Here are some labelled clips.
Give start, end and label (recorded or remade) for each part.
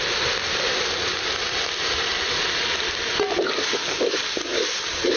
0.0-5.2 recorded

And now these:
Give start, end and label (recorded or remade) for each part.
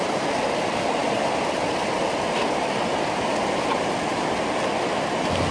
0.0-1.0 recorded; 1.0-3.1 remade; 3.1-5.5 recorded